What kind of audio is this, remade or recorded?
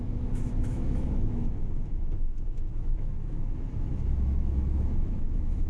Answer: remade